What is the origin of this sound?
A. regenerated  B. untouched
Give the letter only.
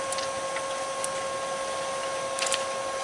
B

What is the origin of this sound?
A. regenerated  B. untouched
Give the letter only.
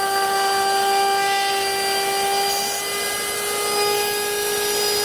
B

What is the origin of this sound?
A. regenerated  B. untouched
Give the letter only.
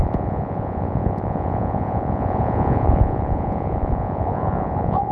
A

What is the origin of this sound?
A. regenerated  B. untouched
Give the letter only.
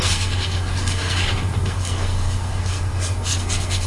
A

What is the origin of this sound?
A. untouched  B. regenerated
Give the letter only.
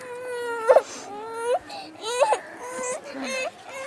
A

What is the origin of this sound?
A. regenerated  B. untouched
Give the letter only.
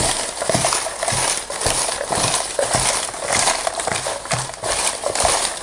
B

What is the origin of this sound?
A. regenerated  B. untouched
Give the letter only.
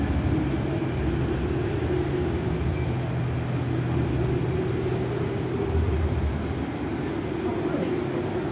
B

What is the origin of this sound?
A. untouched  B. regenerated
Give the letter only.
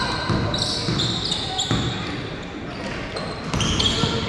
A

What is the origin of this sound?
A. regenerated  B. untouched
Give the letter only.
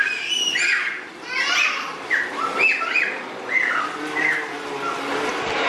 A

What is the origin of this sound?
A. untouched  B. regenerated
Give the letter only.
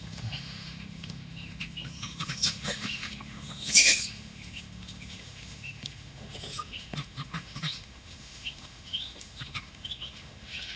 B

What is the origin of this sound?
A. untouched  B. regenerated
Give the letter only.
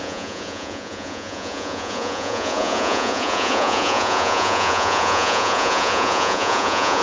B